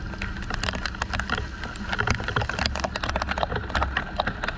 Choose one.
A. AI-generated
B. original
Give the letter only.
B